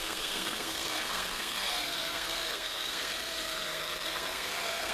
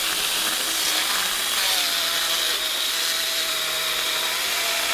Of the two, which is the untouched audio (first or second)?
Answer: second